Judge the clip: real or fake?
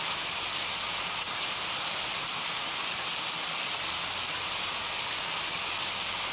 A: real